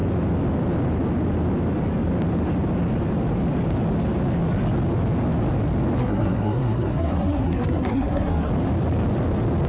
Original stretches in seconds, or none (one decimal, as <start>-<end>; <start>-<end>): 0.0-6.0; 8.5-9.7